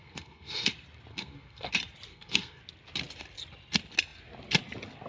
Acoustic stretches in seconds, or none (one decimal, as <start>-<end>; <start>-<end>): 0.7-1.1; 1.7-2.1; 2.6-5.1